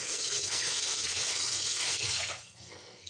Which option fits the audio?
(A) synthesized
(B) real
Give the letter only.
A